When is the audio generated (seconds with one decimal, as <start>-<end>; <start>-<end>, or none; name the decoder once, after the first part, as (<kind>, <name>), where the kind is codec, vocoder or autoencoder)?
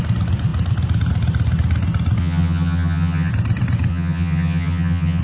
2.2-3.3 (vocoder, HiFi-GAN); 3.9-5.2